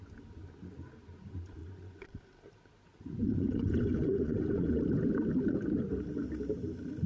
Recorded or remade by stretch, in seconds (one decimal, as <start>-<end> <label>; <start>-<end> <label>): 0.0-1.6 recorded; 1.6-2.2 remade; 2.2-2.9 recorded; 2.9-4.8 remade; 4.8-7.1 recorded